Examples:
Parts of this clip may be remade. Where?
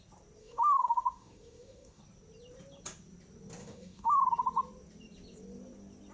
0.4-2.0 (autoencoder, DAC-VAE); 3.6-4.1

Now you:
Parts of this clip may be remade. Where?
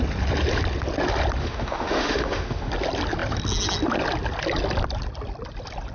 1.4-2.7 (autoencoder, DAC-VAE)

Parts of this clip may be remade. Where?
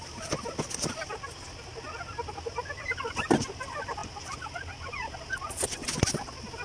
none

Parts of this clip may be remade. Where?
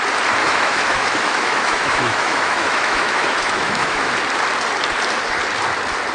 0.4-4.1 (autoencoder, DAC-VAE)